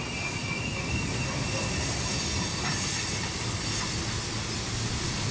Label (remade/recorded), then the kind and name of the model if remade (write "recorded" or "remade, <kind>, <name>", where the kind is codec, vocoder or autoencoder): recorded